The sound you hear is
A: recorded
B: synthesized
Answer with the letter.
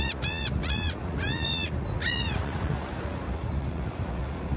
B